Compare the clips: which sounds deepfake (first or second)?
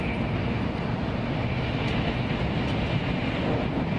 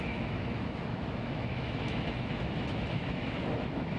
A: second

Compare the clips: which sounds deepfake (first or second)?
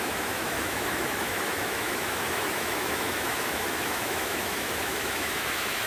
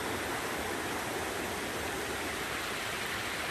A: first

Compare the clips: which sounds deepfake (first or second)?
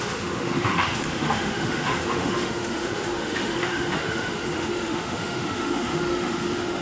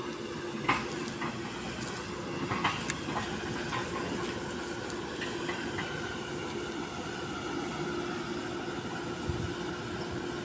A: first